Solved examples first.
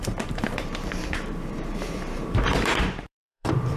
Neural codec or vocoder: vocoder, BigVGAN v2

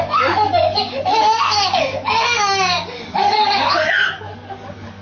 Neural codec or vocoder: codec, DAC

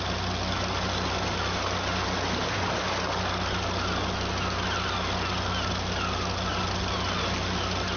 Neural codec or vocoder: none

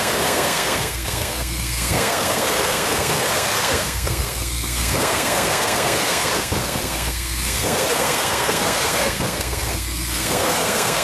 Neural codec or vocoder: codec, SNAC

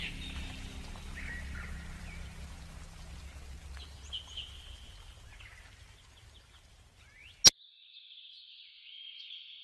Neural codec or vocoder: none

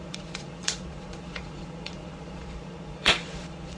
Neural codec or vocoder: vocoder, Vocos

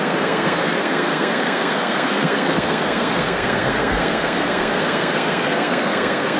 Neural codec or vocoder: codec, SNAC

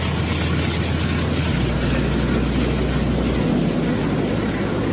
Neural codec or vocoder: none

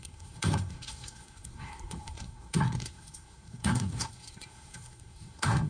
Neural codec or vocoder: codec, SNAC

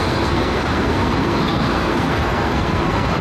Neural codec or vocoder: codec, SNAC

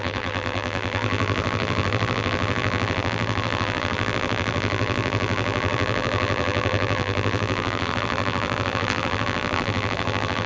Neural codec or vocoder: vocoder, BigVGAN v2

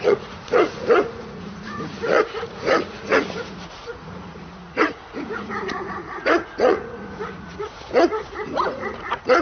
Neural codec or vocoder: vocoder, Vocos